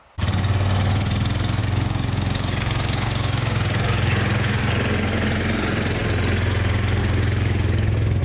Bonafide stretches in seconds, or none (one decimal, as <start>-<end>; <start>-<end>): 0.0-1.6; 4.7-7.0